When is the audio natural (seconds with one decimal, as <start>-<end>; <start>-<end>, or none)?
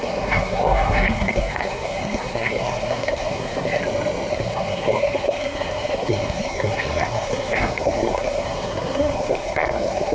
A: 3.8-4.3